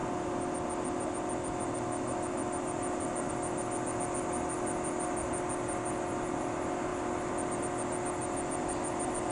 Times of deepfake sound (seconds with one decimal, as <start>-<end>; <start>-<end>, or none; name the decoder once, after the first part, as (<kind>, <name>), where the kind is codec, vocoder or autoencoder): none